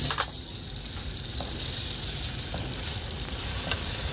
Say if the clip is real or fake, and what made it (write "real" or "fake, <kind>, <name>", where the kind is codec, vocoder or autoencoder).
real